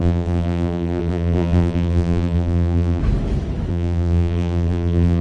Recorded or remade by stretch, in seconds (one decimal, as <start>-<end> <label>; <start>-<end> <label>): 0.0-3.0 remade; 3.0-3.7 recorded; 3.7-5.2 remade